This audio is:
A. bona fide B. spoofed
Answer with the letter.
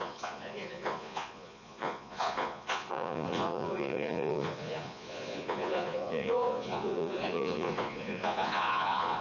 B